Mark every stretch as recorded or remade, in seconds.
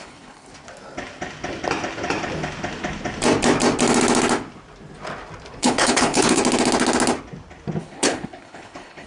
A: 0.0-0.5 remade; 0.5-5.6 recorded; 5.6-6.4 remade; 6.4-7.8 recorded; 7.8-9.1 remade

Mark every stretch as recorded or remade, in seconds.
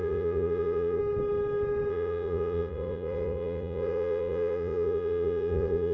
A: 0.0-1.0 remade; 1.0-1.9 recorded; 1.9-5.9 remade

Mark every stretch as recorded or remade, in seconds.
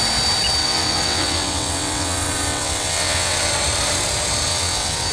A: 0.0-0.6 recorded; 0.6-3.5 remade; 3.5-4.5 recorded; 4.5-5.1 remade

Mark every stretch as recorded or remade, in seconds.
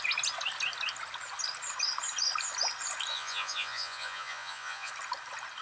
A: 0.0-3.1 recorded; 3.1-4.9 remade; 4.9-5.6 recorded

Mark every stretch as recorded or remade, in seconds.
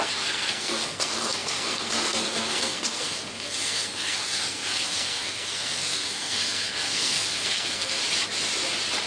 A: 0.0-8.0 remade; 8.0-9.1 recorded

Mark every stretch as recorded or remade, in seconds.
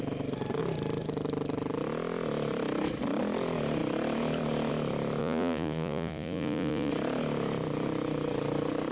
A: 0.0-5.2 recorded; 5.2-6.9 remade; 6.9-8.9 recorded